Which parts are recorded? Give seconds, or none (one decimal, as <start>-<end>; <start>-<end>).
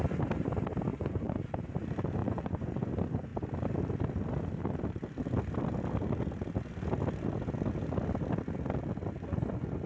0.0-0.9; 1.4-2.2; 2.9-9.9